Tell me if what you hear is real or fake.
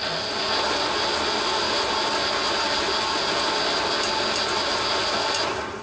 real